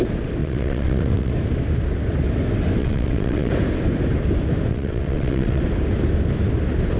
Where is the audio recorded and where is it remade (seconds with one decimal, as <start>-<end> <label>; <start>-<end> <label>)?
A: 0.0-0.4 recorded; 0.4-1.3 remade; 1.3-2.8 recorded; 2.8-3.5 remade; 3.5-4.7 recorded; 4.7-5.6 remade; 5.6-7.0 recorded